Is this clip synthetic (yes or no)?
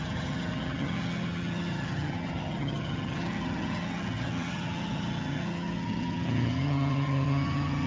yes